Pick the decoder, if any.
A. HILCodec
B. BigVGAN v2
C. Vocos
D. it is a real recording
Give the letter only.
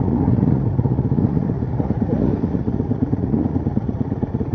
C